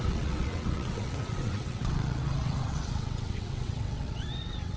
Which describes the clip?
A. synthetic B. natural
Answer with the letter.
A